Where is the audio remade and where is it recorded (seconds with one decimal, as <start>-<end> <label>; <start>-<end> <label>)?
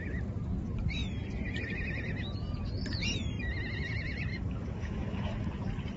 0.0-4.3 recorded; 4.3-5.5 remade; 5.5-6.0 recorded